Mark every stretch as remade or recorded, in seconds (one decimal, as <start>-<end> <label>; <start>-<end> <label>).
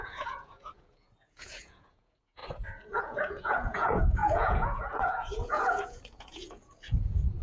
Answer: 0.0-2.4 remade; 2.4-3.0 recorded; 3.0-7.4 remade